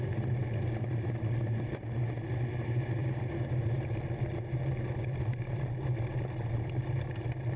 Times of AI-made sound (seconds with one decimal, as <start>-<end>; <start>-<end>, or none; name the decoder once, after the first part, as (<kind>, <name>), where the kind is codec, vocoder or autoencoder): none